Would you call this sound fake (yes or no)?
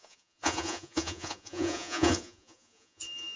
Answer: yes